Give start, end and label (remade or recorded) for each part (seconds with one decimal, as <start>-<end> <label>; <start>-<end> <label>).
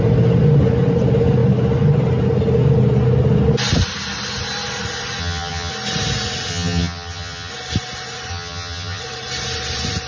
0.0-5.2 recorded; 5.2-5.7 remade; 5.7-6.5 recorded; 6.5-7.5 remade; 7.5-8.3 recorded; 8.3-9.0 remade; 9.0-10.1 recorded